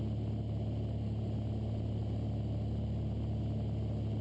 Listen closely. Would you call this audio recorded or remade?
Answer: recorded